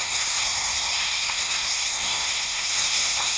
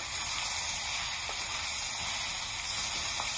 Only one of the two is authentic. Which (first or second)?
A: second